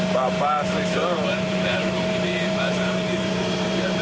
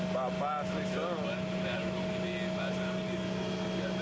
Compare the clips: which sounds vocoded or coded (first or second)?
first